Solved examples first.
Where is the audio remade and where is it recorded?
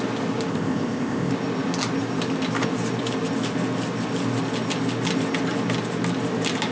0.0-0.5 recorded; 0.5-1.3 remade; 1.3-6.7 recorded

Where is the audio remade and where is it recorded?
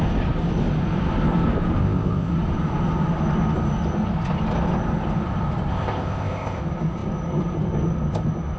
0.0-1.8 recorded; 1.8-2.3 remade; 2.3-5.7 recorded; 5.7-6.6 remade; 6.6-8.6 recorded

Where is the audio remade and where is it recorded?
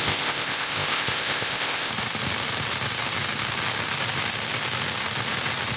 0.0-1.9 remade; 1.9-5.8 recorded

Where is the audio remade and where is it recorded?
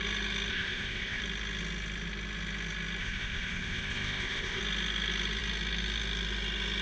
0.0-0.5 recorded; 0.5-1.2 remade; 1.2-3.0 recorded; 3.0-4.6 remade; 4.6-6.8 recorded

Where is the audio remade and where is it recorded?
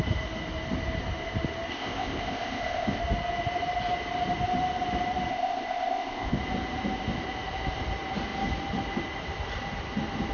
0.0-1.7 recorded; 1.7-3.0 remade; 3.0-5.3 recorded; 5.3-6.4 remade; 6.4-10.3 recorded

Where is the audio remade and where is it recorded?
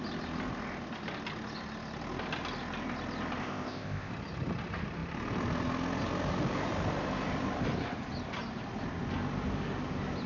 0.0-3.4 recorded; 3.4-4.1 remade; 4.1-10.3 recorded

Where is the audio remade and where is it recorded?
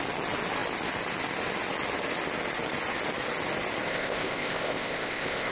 0.0-3.9 recorded; 3.9-5.5 remade